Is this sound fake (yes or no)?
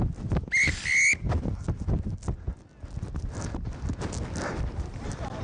no